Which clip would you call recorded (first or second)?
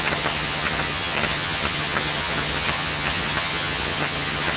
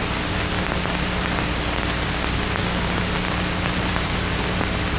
second